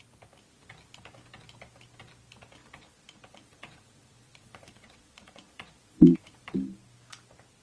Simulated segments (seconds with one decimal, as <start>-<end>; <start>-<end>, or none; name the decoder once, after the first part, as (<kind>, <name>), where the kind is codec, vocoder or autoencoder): 2.6-6.5 (vocoder, Vocos)